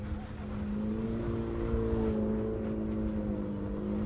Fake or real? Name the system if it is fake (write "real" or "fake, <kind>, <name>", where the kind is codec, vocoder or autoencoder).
real